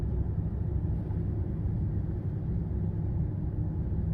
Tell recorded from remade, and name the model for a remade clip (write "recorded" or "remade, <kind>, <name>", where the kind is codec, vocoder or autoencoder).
recorded